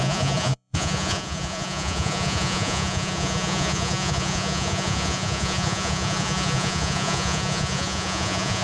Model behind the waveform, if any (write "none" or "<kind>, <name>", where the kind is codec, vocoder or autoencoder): vocoder, Vocos